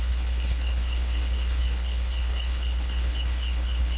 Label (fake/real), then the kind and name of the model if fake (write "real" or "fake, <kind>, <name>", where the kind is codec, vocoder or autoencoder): fake, codec, HILCodec